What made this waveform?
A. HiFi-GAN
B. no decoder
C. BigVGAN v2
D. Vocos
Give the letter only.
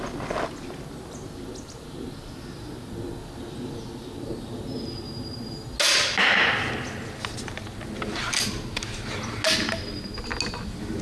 B